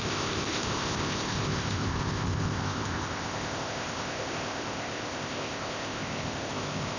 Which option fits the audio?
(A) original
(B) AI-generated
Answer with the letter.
B